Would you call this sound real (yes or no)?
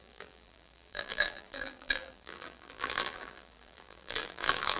no